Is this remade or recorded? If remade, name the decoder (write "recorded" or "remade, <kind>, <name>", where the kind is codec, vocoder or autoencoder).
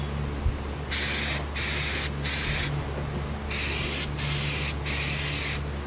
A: recorded